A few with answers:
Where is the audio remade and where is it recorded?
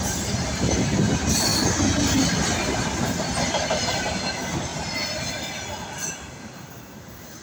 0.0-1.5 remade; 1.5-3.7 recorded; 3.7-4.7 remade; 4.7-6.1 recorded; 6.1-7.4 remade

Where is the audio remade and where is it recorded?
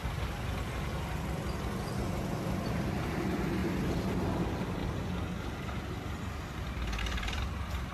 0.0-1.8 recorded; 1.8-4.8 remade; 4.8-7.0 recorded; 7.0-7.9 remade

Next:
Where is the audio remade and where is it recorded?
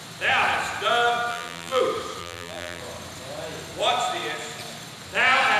0.0-1.3 recorded; 1.3-1.8 remade; 1.8-2.2 recorded; 2.2-2.8 remade; 2.8-5.6 recorded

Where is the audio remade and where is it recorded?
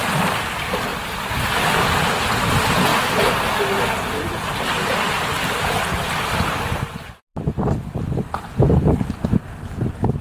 0.0-10.2 recorded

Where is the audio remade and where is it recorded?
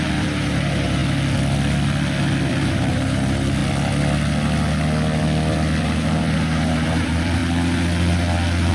0.0-1.0 remade; 1.0-2.5 recorded; 2.5-3.6 remade; 3.6-5.8 recorded; 5.8-7.4 remade; 7.4-8.7 recorded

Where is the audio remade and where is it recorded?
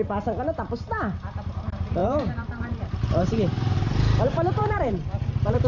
0.0-2.0 recorded; 2.0-5.7 remade